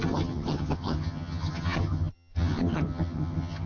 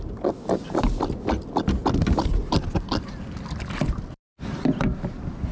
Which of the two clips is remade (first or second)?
first